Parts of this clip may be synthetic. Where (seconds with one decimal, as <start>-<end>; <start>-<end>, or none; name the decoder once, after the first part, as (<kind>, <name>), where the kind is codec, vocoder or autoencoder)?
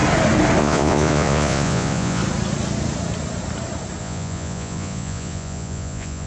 0.6-2.2 (vocoder, Vocos); 4.0-6.3